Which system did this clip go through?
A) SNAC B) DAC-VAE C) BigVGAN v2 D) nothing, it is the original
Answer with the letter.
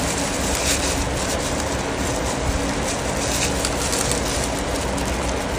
D